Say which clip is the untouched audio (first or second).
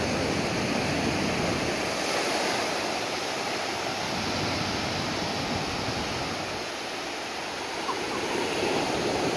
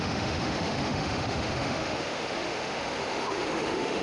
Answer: first